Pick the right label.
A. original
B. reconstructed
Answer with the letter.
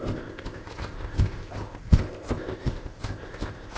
B